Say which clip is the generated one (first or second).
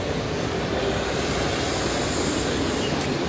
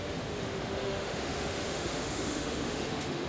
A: second